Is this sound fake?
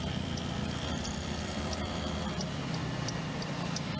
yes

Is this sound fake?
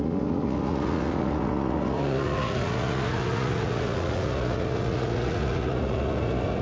yes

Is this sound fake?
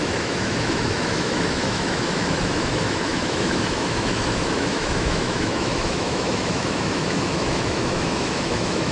yes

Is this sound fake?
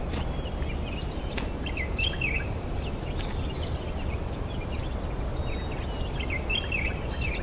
no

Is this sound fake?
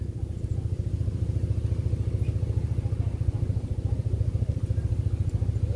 no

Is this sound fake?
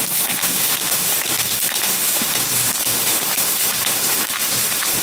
yes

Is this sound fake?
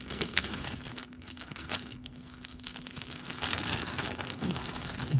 yes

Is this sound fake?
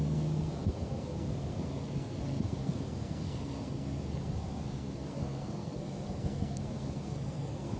yes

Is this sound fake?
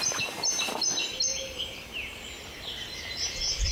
yes